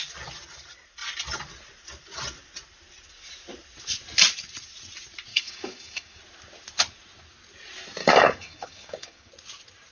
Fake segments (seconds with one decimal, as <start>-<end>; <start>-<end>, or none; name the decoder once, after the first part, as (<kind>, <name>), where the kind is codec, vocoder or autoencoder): 5.3-6.2 (codec, DAC); 8.0-9.3